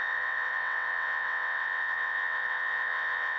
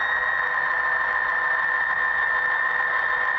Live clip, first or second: second